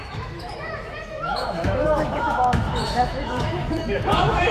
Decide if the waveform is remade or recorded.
remade